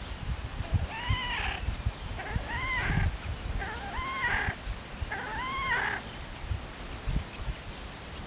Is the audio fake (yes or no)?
no